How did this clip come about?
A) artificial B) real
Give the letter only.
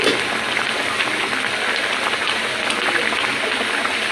B